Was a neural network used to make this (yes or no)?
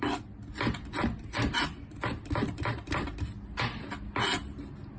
no